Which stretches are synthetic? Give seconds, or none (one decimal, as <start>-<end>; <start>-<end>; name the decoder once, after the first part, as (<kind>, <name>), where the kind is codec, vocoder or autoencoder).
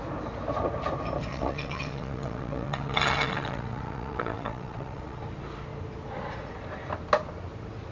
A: 1.3-5.2 (vocoder, WaveNeXt)